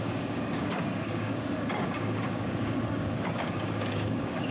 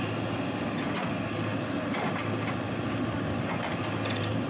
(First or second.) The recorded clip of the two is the second